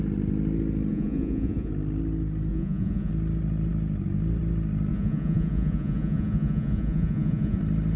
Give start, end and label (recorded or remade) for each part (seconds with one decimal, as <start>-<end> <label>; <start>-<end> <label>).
0.0-0.9 recorded; 0.9-1.7 remade; 1.7-2.5 recorded; 2.5-3.1 remade; 3.1-4.9 recorded; 4.9-7.6 remade; 7.6-8.0 recorded